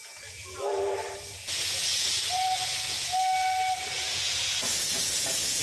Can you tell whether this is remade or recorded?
remade